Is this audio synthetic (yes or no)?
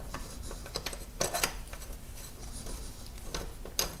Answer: no